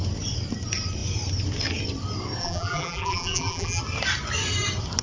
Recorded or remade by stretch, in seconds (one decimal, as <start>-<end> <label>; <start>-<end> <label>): 0.0-2.4 recorded; 2.4-3.8 remade; 3.8-5.0 recorded